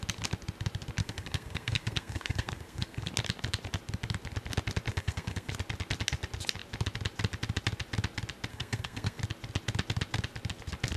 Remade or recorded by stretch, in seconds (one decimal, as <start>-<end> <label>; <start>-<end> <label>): 0.0-1.0 recorded; 1.0-3.1 remade; 3.1-4.9 recorded; 4.9-5.5 remade; 5.5-8.5 recorded; 8.5-9.2 remade; 9.2-11.0 recorded